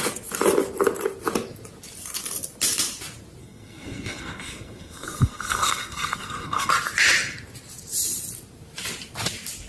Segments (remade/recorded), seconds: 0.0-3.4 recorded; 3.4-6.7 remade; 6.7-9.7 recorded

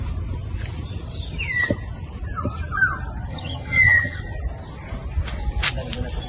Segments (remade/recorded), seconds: 0.0-3.3 recorded; 3.3-4.2 remade; 4.2-6.3 recorded

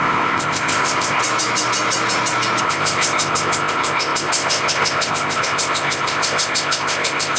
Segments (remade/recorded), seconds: 0.0-1.2 remade; 1.2-2.6 recorded; 2.6-7.4 remade

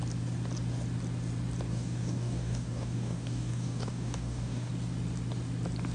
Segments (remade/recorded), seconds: 0.0-1.7 recorded; 1.7-4.7 remade; 4.7-5.9 recorded